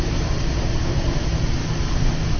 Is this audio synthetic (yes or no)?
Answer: no